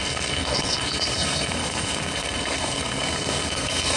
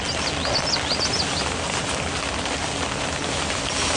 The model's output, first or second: first